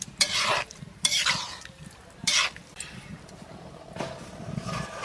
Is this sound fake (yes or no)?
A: yes